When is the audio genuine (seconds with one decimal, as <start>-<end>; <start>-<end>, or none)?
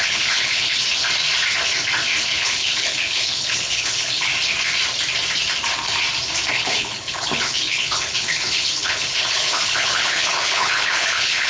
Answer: 0.8-2.3; 4.3-6.5